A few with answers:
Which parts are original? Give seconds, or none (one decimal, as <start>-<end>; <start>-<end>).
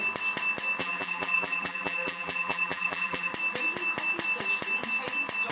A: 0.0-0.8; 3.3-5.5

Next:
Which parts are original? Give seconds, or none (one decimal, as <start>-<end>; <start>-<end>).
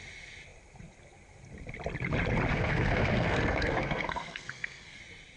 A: 0.0-2.5; 5.0-5.4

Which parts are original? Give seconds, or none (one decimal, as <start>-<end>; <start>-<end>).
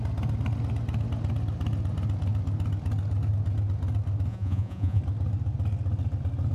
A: 0.0-4.3; 5.0-6.5